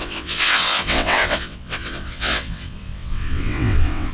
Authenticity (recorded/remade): remade